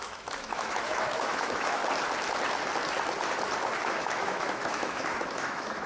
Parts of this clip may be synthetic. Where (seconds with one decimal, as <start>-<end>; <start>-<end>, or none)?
0.0-1.8; 3.8-5.9